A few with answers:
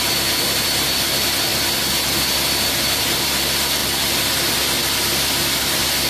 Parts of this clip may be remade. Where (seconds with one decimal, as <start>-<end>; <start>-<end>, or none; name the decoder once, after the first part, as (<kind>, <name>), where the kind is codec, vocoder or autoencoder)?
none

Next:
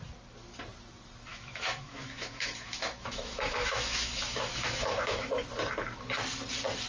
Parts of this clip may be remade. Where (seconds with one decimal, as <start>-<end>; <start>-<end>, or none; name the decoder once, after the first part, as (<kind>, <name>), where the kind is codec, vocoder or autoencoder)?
1.3-5.4 (autoencoder, DAC-VAE)

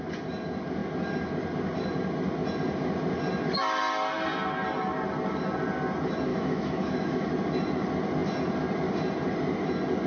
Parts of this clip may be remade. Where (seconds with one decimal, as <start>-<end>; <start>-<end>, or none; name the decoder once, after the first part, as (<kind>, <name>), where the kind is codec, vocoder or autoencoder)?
6.3-7.3 (autoencoder, DAC-VAE)

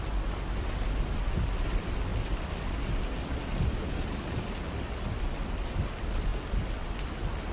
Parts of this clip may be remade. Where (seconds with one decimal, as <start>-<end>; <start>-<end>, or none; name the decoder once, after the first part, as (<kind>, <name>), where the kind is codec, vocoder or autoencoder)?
none

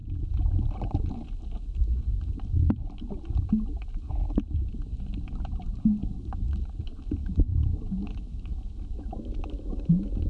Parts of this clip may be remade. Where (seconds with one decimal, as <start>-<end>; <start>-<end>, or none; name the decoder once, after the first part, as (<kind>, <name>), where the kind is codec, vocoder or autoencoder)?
6.0-6.6 (autoencoder, DAC-VAE); 7.2-10.3

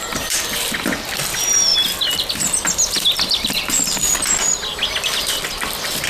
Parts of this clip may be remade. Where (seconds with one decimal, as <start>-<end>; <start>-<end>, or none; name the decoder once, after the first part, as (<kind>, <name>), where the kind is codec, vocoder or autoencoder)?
none

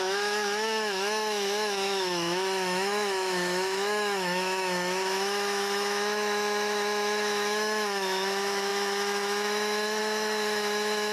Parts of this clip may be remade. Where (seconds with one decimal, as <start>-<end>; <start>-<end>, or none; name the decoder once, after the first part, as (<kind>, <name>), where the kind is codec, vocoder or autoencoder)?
0.0-11.1 (autoencoder, DAC-VAE)